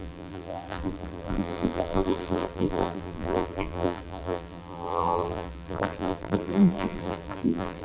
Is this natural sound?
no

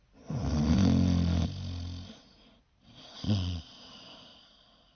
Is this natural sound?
yes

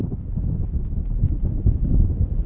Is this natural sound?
yes